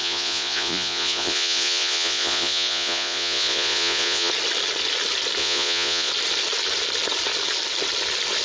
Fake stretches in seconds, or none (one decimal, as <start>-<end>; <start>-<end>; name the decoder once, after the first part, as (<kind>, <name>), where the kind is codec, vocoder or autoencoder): 0.0-4.3 (vocoder, Vocos); 5.4-6.1